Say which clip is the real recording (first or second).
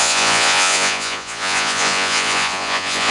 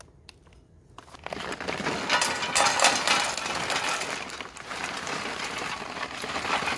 second